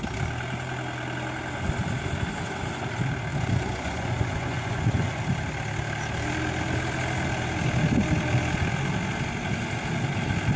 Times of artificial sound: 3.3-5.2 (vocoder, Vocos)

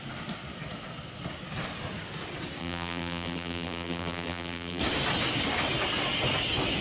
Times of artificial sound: 2.6-4.8 (vocoder, BigVGAN v2)

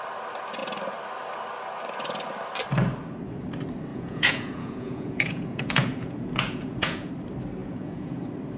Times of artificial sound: 3.9-7.1 (vocoder, Vocos); 7.6-8.2

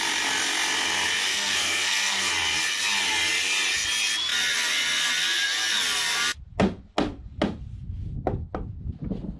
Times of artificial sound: 1.3-2.3 (codec, SNAC)

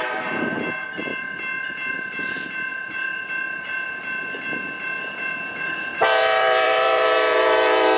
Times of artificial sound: 0.0-1.1 (vocoder, BigVGAN v2); 1.9-8.0

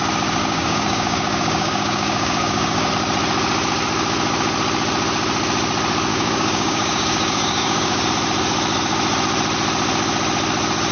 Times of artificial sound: 0.4-2.9 (codec, DAC); 6.1-8.1

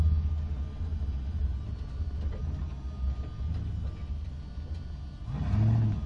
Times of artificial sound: none